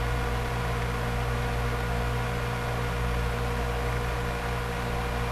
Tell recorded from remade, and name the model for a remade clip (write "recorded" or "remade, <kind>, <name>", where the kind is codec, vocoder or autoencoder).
recorded